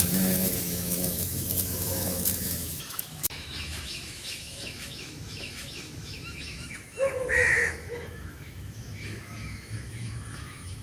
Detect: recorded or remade remade